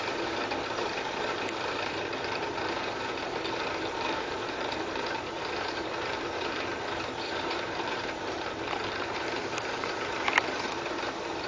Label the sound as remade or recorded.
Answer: remade